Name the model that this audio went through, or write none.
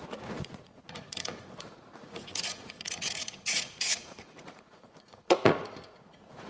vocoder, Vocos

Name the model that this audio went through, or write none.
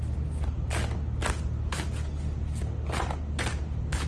none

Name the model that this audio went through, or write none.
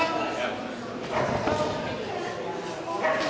none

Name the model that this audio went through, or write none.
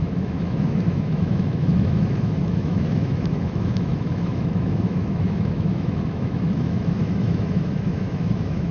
autoencoder, DAC-VAE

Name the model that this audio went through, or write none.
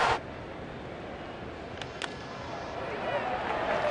none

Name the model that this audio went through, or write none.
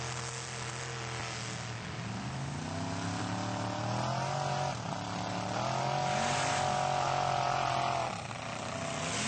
none